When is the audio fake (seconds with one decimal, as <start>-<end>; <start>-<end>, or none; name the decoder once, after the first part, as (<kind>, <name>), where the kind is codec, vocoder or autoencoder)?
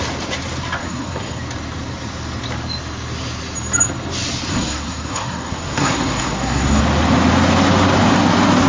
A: 0.8-1.4 (codec, SNAC); 4.5-6.8